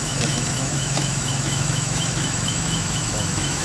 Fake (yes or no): yes